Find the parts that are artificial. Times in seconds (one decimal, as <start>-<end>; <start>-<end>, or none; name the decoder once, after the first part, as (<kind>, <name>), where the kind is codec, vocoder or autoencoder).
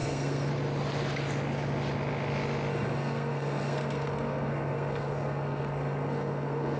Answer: 0.0-0.5 (codec, SNAC); 2.7-6.8